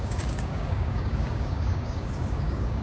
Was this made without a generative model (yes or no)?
no